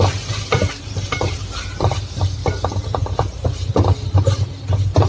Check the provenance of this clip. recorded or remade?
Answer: recorded